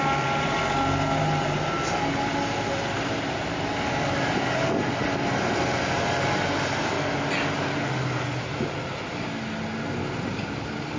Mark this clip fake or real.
real